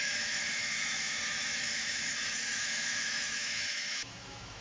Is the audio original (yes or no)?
no